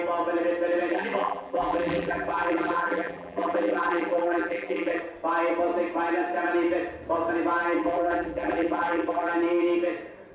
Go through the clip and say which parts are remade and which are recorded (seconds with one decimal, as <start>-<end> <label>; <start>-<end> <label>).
0.0-0.9 recorded; 0.9-5.0 remade; 5.0-7.8 recorded; 7.8-9.3 remade; 9.3-10.3 recorded